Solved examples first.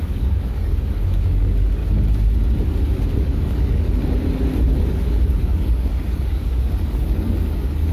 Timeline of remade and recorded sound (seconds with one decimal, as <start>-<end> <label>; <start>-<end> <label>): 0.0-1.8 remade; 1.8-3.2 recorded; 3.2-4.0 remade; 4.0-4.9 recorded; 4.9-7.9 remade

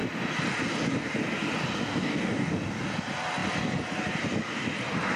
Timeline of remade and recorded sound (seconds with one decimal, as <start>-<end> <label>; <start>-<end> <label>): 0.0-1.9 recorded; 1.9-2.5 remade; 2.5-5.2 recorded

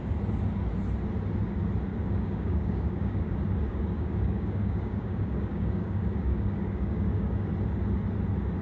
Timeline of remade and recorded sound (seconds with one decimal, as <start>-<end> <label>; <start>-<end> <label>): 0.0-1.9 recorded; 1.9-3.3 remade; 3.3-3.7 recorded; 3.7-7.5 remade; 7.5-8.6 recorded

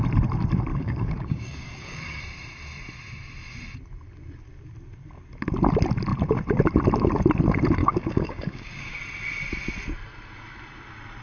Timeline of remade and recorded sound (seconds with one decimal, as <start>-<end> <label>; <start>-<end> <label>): 0.0-0.7 recorded; 0.7-2.2 remade; 2.2-7.8 recorded; 7.8-9.0 remade; 9.0-11.2 recorded